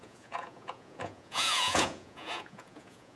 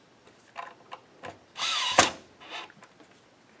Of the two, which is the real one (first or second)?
second